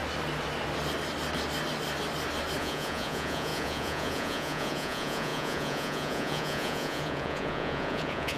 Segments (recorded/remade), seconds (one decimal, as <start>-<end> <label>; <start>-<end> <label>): 0.0-2.6 recorded; 2.6-8.4 remade